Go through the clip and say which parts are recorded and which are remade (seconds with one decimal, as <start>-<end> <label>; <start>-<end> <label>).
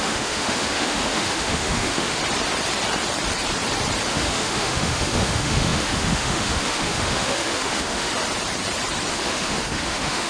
0.0-2.2 remade; 2.2-4.1 recorded; 4.1-8.1 remade; 8.1-9.1 recorded; 9.1-10.3 remade